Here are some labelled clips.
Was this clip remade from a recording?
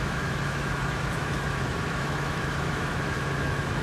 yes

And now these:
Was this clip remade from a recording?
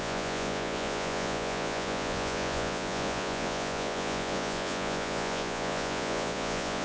yes